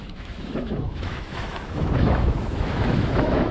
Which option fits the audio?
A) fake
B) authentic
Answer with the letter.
A